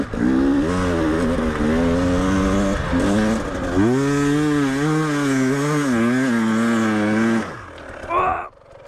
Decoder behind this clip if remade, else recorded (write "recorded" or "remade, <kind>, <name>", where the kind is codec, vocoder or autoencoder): recorded